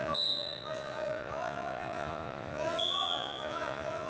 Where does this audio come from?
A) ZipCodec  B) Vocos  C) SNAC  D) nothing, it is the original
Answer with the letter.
B